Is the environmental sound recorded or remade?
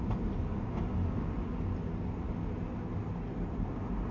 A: recorded